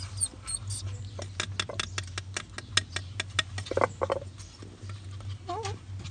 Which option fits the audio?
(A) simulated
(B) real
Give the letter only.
B